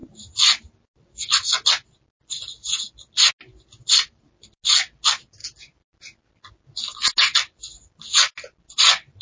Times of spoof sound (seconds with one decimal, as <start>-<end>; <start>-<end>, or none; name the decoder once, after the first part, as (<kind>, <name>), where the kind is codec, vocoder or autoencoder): none